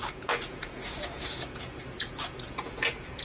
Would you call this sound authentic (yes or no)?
no